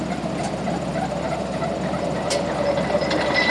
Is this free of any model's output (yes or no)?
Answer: yes